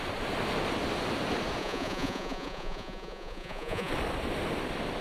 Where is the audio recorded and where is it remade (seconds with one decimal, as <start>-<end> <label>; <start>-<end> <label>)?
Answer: 0.0-1.6 recorded; 1.6-3.9 remade; 3.9-5.0 recorded

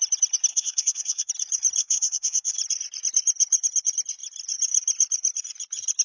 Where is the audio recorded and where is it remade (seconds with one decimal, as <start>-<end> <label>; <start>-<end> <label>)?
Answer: 0.0-0.5 recorded; 0.5-1.3 remade; 1.3-1.8 recorded; 1.8-2.5 remade; 2.5-6.0 recorded